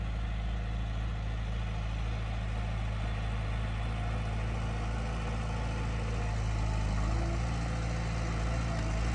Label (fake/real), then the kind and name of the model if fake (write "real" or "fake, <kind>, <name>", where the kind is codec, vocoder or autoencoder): real